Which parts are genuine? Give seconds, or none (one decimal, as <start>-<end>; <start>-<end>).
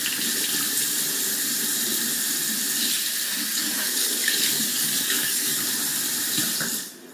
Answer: 0.0-3.5; 5.7-7.1